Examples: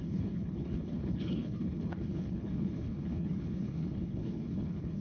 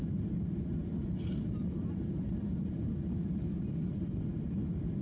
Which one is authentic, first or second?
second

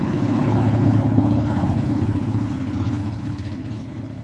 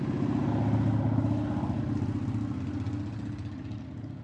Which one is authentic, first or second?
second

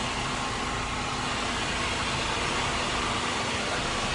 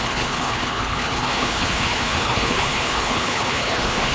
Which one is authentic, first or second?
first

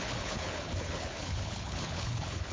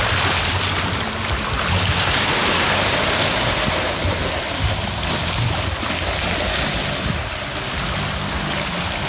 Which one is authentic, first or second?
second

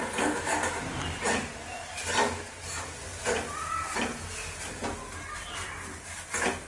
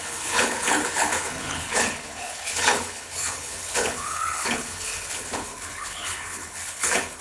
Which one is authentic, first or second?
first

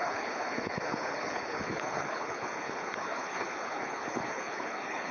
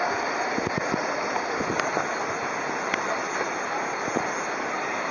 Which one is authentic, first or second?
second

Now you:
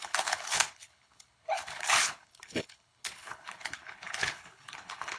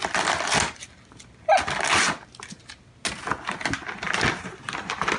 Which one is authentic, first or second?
second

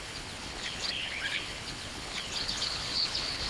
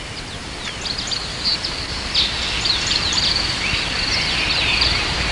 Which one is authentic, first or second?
second